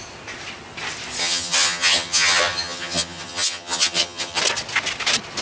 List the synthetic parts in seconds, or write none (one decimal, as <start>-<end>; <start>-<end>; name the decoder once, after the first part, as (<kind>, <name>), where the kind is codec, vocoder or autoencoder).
1.2-4.4 (vocoder, HiFi-GAN)